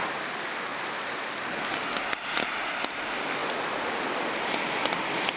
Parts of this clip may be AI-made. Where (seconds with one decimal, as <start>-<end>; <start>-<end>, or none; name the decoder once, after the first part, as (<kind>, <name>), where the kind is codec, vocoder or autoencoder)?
none